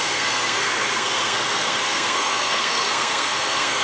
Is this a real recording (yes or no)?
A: no